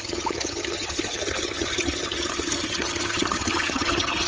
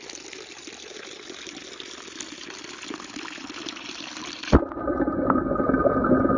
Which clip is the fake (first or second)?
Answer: first